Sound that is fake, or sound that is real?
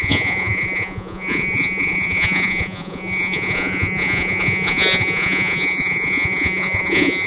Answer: fake